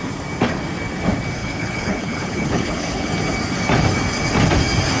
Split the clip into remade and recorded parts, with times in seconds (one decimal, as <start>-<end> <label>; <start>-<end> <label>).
0.0-1.4 recorded; 1.4-3.1 remade; 3.1-5.0 recorded